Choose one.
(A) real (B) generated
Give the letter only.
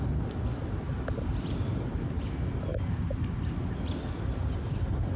A